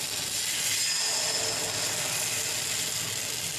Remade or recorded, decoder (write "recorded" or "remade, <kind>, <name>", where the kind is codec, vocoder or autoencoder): recorded